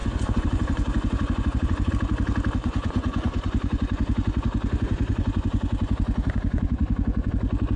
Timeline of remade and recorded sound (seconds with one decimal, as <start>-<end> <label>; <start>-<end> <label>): 0.0-1.9 remade; 1.9-2.6 recorded; 2.6-7.3 remade; 7.3-7.8 recorded